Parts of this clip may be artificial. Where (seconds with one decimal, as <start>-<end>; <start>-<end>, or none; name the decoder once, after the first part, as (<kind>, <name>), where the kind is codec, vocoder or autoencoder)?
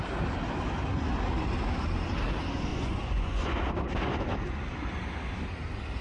2.7-3.6 (vocoder, Vocos)